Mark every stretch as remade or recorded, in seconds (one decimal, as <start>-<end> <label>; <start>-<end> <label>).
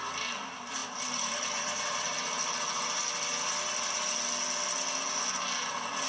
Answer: 0.0-0.8 recorded; 0.8-3.0 remade; 3.0-6.1 recorded